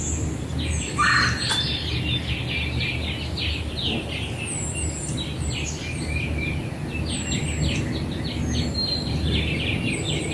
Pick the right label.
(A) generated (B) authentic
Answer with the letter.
B